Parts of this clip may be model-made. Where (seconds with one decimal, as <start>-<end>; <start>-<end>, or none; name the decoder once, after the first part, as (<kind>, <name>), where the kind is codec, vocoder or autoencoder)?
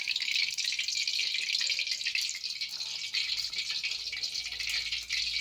none